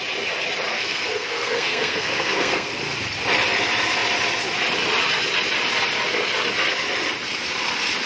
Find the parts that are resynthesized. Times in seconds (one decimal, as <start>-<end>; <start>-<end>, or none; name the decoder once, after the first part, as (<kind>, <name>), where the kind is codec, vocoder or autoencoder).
0.7-2.8 (codec, SNAC)